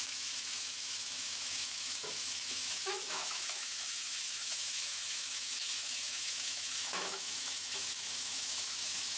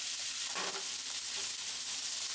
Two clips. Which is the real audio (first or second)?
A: second